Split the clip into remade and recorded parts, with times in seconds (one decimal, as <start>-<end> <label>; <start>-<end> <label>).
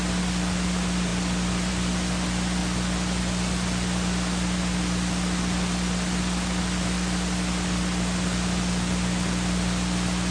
0.0-10.3 recorded